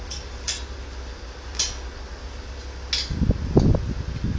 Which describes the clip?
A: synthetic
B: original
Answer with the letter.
B